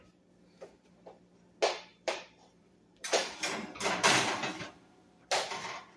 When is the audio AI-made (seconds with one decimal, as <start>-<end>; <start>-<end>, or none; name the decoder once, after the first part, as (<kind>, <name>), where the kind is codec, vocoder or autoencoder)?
1.9-5.3 (vocoder, BigVGAN v2)